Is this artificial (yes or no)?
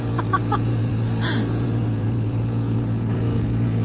yes